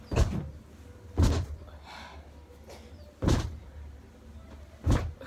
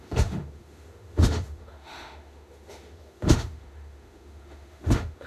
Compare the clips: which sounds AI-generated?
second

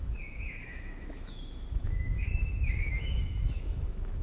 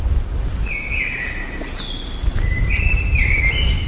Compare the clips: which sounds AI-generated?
first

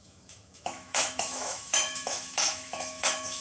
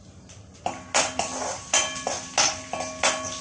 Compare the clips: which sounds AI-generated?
first